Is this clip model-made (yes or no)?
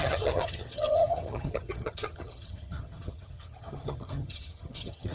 yes